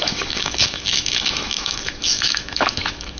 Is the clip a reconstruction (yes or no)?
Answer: yes